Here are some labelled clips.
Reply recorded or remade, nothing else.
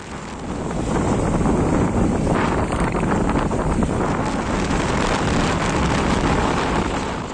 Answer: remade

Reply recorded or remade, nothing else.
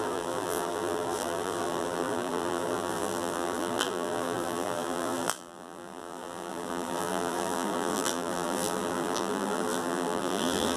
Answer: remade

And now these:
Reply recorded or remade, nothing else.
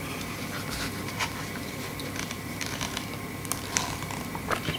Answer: recorded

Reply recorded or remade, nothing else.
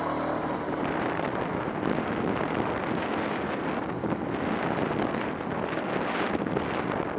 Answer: recorded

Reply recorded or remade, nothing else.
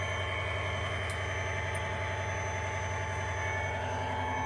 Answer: recorded